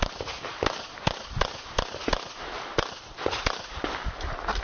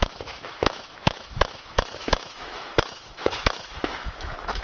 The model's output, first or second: second